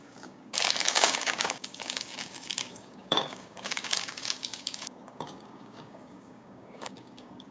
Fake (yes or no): yes